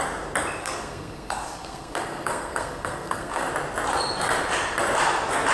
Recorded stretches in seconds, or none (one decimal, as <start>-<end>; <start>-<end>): 0.0-0.6; 3.5-5.5